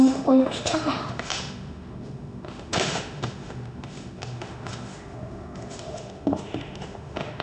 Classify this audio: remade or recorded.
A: remade